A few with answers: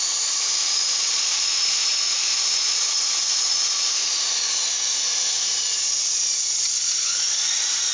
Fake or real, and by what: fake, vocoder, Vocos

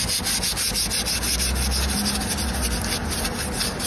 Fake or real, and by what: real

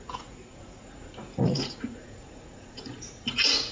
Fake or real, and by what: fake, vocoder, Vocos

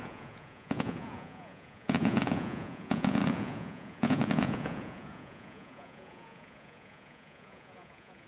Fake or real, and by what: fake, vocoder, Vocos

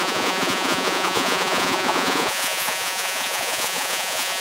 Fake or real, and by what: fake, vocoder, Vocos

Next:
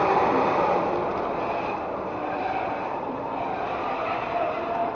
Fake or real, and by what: real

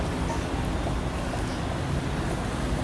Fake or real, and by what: real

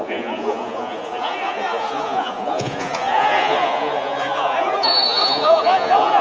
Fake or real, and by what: fake, vocoder, Vocos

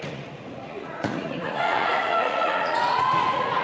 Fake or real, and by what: fake, vocoder, Vocos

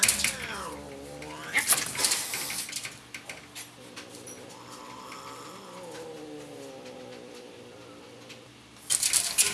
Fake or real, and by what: real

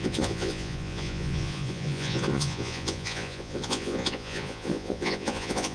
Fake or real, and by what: fake, vocoder, Vocos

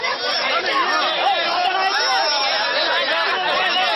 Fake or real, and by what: real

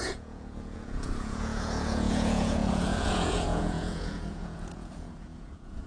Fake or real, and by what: fake, vocoder, Vocos